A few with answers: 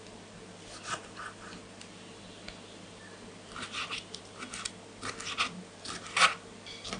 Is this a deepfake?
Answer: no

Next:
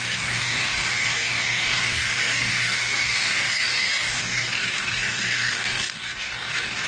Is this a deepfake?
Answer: yes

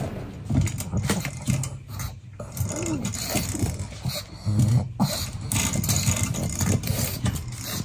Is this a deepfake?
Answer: no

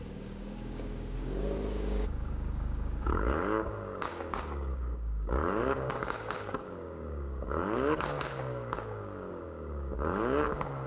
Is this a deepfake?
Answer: yes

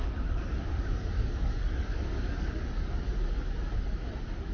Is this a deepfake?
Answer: yes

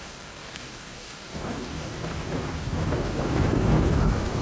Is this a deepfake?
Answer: yes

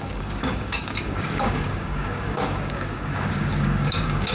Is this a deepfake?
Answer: yes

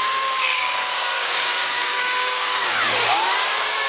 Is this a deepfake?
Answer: yes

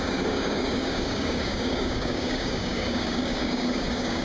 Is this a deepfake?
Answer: yes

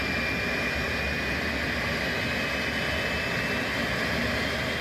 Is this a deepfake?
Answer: no